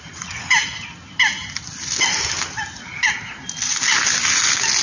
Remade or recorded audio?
recorded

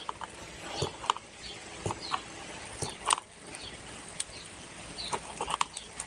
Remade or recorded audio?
recorded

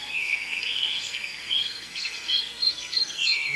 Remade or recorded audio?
remade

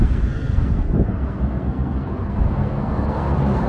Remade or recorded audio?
remade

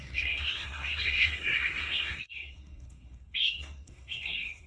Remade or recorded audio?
remade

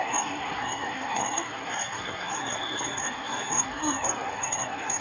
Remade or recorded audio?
remade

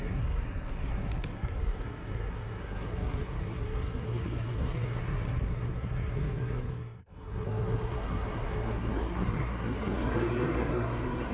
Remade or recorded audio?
remade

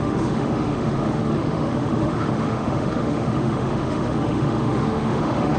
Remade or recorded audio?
remade